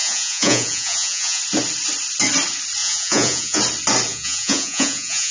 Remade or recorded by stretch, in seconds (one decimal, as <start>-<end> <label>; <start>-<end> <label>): 0.0-1.4 remade; 1.4-2.8 recorded; 2.8-3.6 remade; 3.6-4.1 recorded; 4.1-5.3 remade